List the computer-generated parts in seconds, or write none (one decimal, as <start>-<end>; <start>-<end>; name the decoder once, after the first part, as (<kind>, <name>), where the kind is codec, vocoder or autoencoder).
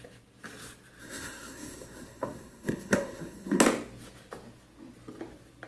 1.0-3.6 (codec, SNAC)